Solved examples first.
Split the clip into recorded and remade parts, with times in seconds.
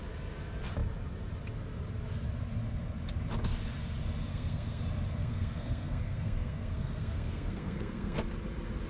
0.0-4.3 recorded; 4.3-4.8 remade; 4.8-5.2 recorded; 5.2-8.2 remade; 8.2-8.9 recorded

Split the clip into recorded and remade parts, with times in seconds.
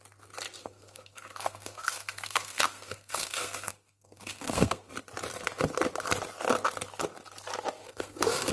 0.0-0.6 recorded; 0.6-4.9 remade; 4.9-7.8 recorded; 7.8-8.5 remade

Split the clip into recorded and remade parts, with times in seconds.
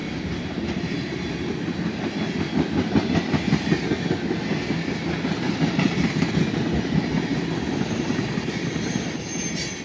0.0-9.8 recorded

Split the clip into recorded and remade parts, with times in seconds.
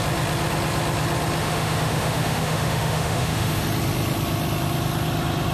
0.0-1.4 recorded; 1.4-3.6 remade; 3.6-5.5 recorded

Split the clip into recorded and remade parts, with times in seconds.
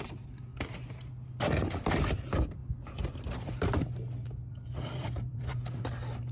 0.0-0.5 remade; 0.5-1.9 recorded; 1.9-2.6 remade; 2.6-3.3 recorded; 3.3-6.3 remade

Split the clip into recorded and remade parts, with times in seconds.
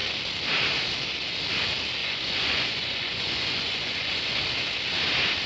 0.0-2.0 recorded; 2.0-4.4 remade; 4.4-5.5 recorded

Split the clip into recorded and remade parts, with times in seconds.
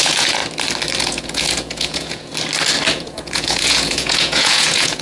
0.0-0.4 remade; 0.4-1.0 recorded; 1.0-2.3 remade; 2.3-2.9 recorded; 2.9-5.0 remade